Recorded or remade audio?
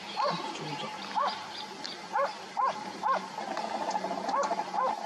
recorded